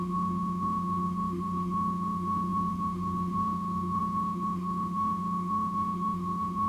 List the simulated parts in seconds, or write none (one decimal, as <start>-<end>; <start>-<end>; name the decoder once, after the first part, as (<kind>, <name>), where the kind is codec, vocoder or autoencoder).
0.0-6.7 (autoencoder, DAC-VAE)